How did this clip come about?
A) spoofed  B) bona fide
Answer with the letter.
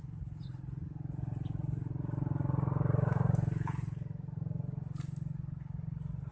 B